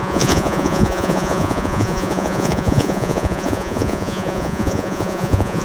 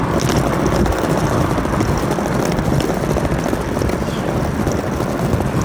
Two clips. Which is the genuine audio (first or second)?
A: second